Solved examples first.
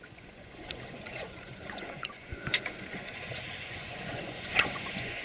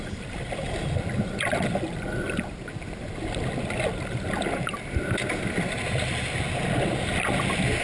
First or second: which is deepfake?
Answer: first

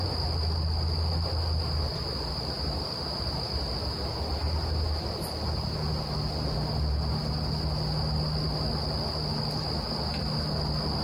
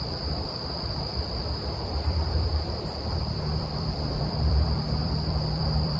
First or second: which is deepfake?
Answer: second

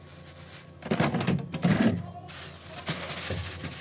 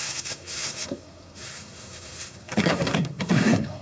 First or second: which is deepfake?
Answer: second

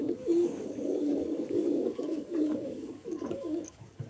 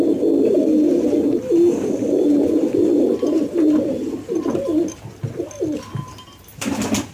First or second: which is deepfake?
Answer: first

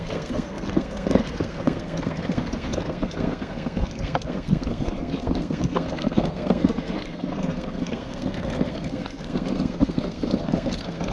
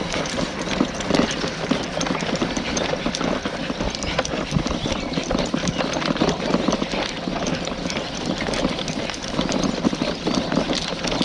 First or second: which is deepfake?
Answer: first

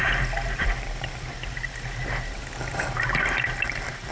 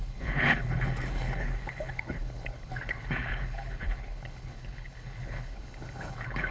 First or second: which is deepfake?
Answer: second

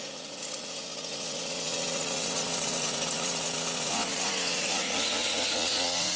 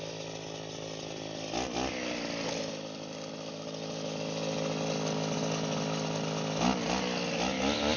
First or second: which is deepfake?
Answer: first